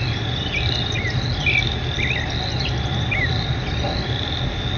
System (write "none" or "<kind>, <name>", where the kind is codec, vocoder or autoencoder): none